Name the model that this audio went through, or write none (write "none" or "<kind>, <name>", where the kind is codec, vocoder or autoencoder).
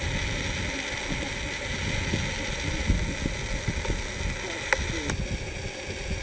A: none